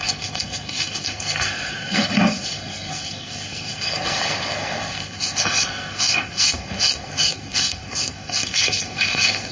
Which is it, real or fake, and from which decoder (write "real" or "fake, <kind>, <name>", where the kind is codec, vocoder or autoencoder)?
fake, codec, SNAC